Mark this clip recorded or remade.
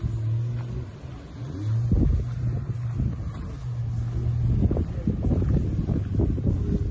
recorded